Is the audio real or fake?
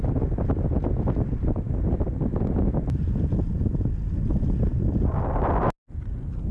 real